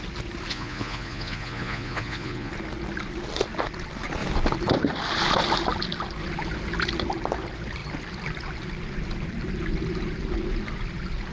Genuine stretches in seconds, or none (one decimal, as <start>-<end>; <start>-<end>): 0.0-0.5; 2.5-11.3